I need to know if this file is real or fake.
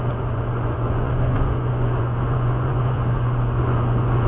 fake